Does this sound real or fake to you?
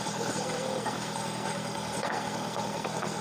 fake